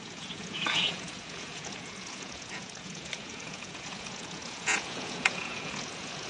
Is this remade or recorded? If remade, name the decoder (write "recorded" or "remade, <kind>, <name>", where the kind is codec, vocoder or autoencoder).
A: remade, vocoder, Vocos